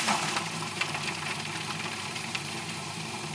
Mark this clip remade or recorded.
remade